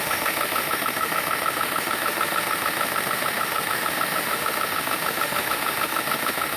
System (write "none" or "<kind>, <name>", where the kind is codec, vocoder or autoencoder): autoencoder, DAC-VAE